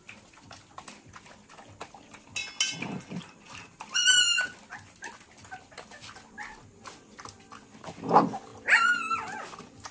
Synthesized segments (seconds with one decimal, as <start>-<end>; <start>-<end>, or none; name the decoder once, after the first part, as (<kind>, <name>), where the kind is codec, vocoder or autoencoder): none